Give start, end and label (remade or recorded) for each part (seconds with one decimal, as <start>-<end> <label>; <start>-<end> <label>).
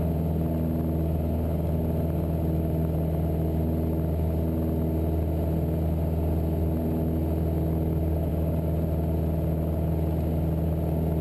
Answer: 0.0-11.2 recorded